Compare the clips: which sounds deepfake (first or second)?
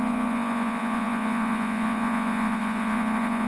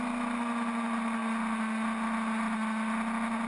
first